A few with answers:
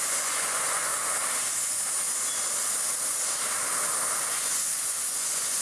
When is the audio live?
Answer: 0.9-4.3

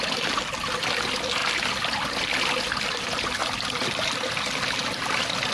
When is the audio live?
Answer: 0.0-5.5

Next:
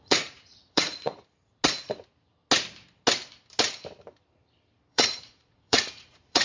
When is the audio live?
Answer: 1.1-4.9

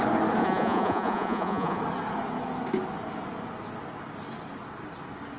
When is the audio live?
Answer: 0.0-0.4; 1.8-5.4

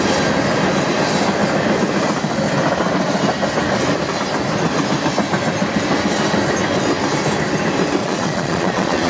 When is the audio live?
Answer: 0.0-8.0